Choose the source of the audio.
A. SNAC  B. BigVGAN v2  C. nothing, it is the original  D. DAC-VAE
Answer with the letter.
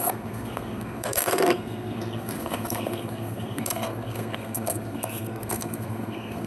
A